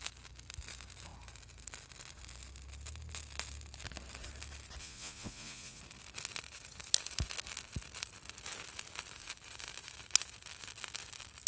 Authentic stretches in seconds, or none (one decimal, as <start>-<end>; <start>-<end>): 0.0-4.8; 5.8-11.5